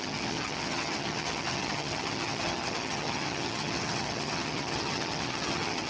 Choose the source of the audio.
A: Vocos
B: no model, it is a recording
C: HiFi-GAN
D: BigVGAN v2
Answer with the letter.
C